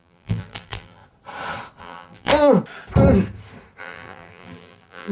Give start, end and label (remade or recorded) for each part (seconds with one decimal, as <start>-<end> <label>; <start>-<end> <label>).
0.0-1.0 remade; 1.0-1.8 recorded; 1.8-2.3 remade; 2.3-3.8 recorded; 3.8-5.1 remade